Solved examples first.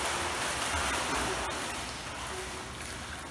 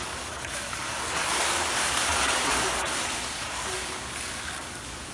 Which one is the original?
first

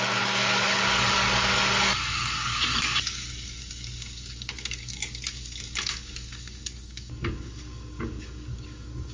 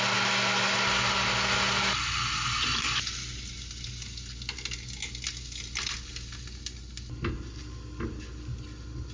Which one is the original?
second